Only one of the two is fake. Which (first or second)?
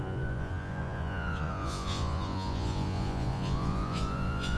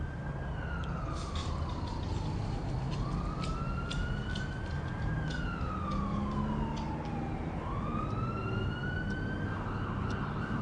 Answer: first